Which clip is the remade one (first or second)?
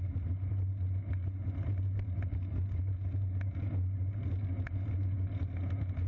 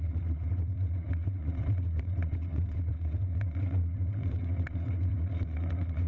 second